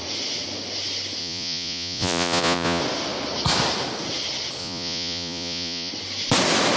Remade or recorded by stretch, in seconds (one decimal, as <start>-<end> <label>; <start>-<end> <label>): 0.0-1.2 recorded; 1.2-2.8 remade; 2.8-4.6 recorded; 4.6-5.9 remade; 5.9-6.8 recorded